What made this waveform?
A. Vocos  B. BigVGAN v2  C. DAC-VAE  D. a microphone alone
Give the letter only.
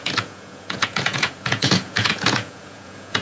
A